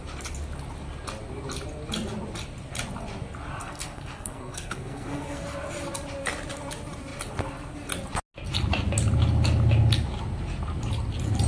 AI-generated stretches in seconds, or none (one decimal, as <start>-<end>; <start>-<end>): 3.6-5.4